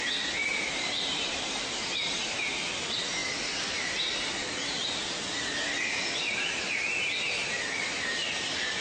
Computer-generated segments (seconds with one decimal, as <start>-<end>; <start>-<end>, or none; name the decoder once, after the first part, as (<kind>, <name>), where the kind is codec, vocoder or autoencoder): 0.4-2.4 (vocoder, BigVGAN v2)